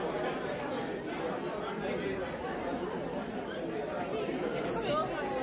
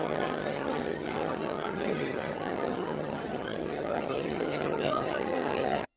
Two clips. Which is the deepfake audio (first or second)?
second